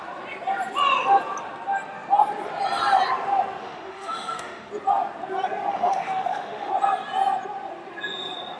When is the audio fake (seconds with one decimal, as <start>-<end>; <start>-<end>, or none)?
3.6-4.7; 5.7-6.7